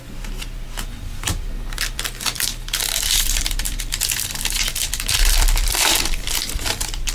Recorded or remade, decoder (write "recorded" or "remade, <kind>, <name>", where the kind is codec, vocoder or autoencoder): remade, vocoder, BigVGAN v2